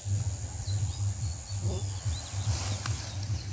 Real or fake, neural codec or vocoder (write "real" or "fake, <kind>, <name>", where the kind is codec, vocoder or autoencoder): real